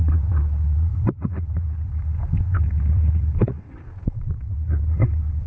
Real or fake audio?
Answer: fake